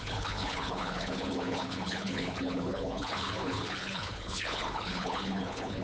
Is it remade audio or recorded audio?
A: remade